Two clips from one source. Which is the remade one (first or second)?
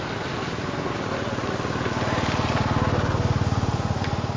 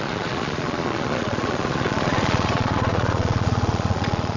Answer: second